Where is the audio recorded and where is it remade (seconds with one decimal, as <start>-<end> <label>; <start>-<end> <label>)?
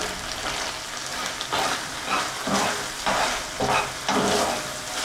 0.0-5.0 recorded